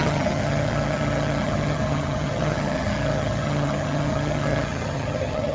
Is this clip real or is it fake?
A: fake